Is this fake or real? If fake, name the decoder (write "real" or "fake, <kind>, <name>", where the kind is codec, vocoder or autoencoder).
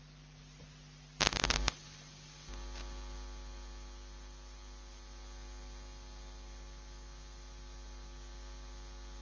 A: real